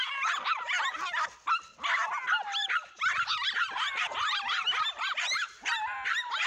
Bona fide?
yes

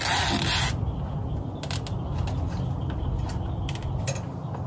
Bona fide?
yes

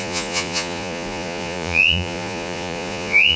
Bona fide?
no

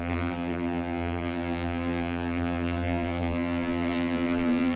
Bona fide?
no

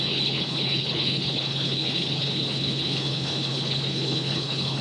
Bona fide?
no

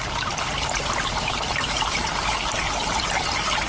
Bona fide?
yes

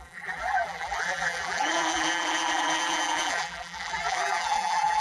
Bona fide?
no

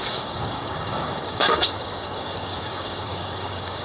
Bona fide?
no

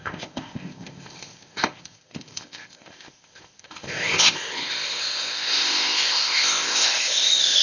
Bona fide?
no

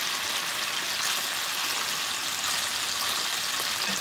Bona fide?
yes